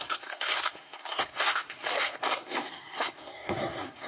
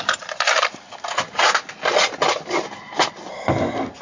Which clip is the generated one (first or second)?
first